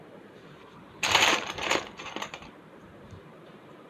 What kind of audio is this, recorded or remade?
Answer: remade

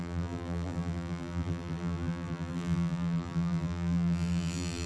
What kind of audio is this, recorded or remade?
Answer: remade